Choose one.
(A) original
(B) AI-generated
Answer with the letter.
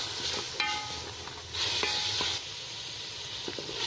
A